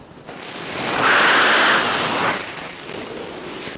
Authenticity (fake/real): real